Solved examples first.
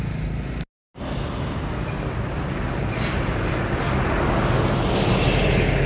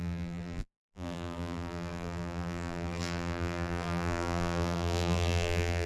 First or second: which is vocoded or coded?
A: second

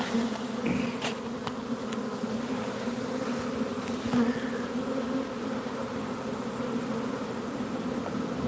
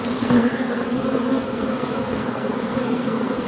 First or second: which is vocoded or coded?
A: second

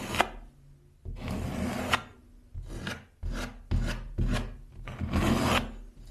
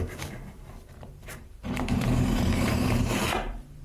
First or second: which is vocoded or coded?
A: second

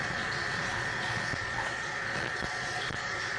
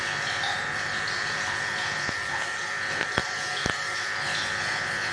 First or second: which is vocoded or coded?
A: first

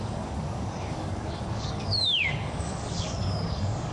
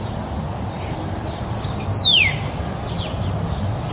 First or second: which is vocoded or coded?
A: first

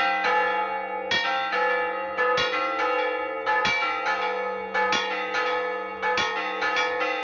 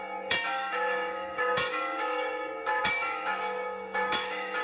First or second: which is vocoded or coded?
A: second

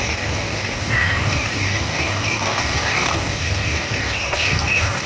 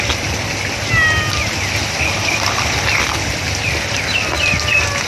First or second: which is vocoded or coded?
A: first